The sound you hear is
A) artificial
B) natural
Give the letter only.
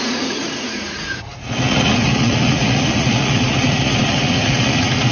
A